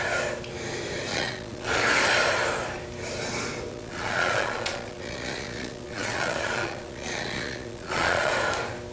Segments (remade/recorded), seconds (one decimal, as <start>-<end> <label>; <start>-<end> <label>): 0.0-1.1 recorded; 1.1-1.8 remade; 1.8-3.7 recorded; 3.7-8.3 remade; 8.3-8.9 recorded